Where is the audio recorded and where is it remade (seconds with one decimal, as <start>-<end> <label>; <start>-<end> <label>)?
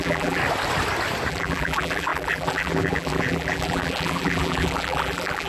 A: 0.0-0.4 remade; 0.4-1.3 recorded; 1.3-5.5 remade